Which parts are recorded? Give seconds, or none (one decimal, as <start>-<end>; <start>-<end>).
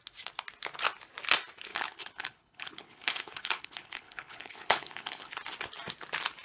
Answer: 0.0-1.7; 5.3-6.4